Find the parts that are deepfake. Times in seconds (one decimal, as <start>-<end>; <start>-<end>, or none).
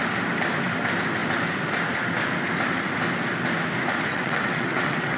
4.1-5.2